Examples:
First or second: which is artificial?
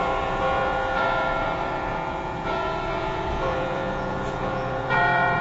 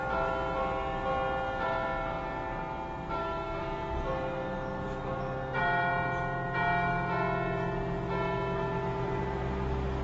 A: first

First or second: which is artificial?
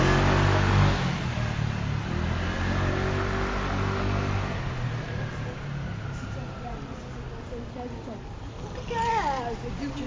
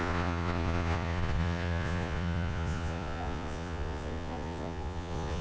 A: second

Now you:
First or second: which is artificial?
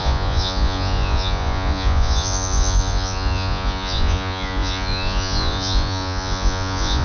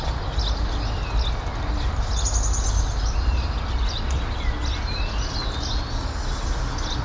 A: first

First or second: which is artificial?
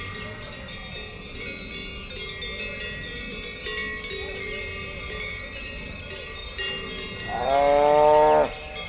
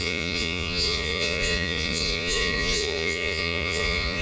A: second